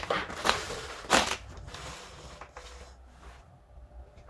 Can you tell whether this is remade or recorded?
recorded